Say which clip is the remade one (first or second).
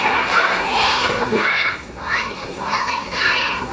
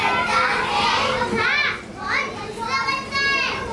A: first